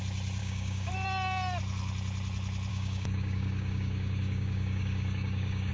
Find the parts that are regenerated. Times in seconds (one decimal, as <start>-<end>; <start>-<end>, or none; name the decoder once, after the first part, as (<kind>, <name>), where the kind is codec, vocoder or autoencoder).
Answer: 0.4-0.9 (codec, DAC); 2.7-5.7